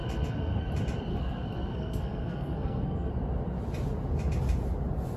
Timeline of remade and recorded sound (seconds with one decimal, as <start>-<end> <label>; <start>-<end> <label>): 0.0-0.7 remade; 0.7-1.1 recorded; 1.1-3.1 remade; 3.1-5.2 recorded

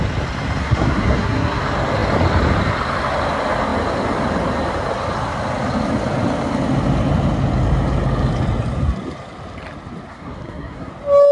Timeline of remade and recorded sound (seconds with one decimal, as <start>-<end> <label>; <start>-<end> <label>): 0.0-0.6 recorded; 0.6-1.6 remade; 1.6-10.1 recorded; 10.1-10.9 remade; 10.9-11.3 recorded

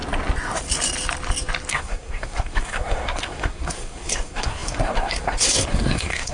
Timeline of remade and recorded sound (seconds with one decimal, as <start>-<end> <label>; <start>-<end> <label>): 0.0-1.7 recorded; 1.7-6.3 remade

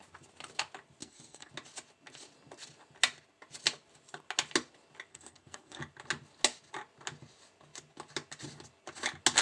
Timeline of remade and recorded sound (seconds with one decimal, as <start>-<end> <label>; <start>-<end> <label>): 0.0-1.0 recorded; 1.0-1.5 remade; 1.5-5.1 recorded; 5.1-5.8 remade; 5.8-9.4 recorded